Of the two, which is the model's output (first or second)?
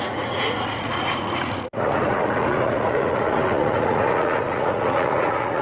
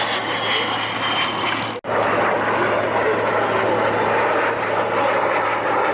first